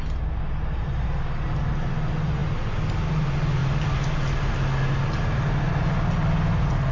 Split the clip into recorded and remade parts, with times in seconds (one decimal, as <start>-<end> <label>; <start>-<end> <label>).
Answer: 0.0-6.9 recorded